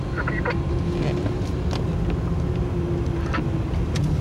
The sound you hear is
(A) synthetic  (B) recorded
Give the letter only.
B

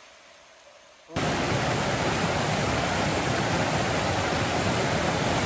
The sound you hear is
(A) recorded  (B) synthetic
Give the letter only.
A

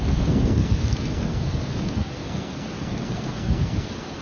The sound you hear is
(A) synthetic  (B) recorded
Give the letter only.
A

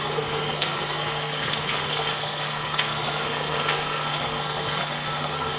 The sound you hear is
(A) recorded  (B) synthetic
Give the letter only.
B